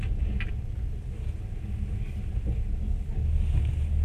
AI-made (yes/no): no